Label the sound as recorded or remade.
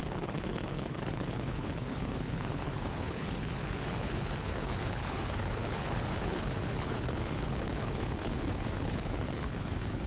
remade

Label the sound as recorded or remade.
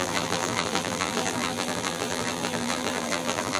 remade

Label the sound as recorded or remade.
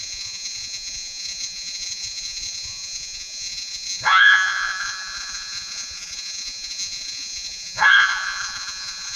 remade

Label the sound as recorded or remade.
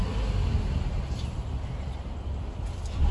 recorded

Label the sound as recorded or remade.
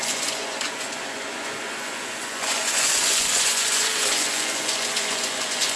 remade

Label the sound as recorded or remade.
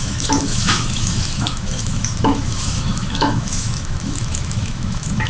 remade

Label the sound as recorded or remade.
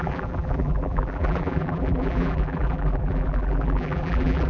remade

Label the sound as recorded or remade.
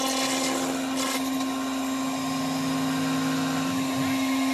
recorded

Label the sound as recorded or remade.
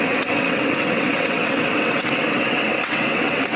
remade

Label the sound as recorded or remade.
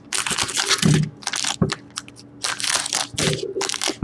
recorded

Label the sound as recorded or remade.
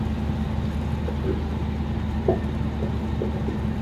recorded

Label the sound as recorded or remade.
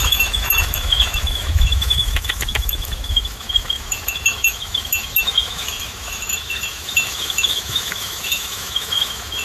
remade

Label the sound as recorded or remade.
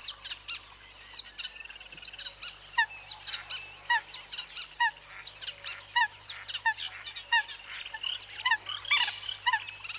recorded